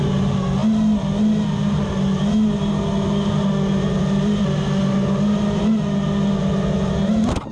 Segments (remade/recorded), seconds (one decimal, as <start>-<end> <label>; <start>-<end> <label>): 0.0-7.5 recorded